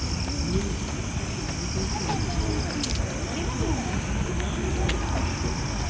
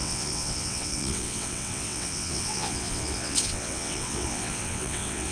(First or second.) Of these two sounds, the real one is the first